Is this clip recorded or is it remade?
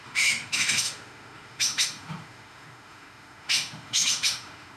remade